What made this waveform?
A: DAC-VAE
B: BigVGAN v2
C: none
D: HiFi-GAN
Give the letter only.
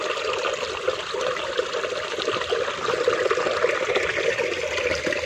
C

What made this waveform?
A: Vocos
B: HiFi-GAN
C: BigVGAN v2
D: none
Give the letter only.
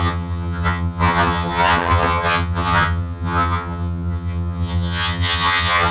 B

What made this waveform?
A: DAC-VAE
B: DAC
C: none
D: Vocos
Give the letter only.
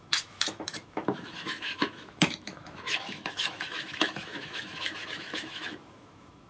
A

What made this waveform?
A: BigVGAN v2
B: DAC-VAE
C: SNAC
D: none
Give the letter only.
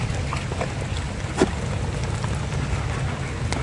D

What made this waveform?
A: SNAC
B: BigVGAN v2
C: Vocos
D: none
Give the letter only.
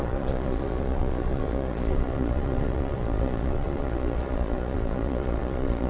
C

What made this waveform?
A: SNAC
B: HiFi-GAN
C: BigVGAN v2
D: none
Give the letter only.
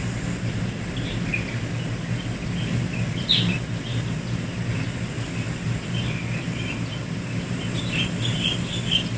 D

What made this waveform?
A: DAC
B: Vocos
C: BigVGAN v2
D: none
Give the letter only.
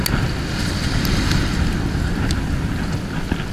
D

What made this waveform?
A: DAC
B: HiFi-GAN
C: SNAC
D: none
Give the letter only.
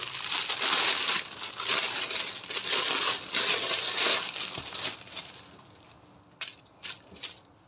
D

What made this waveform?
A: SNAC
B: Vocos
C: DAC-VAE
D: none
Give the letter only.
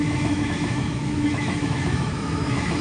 C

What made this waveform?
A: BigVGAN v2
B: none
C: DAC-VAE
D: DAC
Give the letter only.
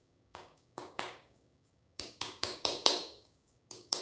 D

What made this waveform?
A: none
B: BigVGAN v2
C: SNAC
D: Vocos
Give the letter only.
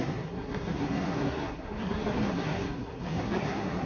C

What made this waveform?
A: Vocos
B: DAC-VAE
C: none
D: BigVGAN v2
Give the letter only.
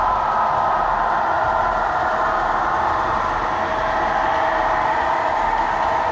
C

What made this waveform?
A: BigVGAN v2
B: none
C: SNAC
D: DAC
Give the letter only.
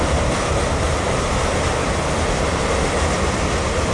B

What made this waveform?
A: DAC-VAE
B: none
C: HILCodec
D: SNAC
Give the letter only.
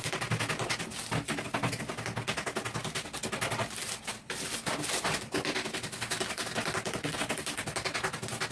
B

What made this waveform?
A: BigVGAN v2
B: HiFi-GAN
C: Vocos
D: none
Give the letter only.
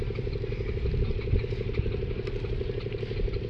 D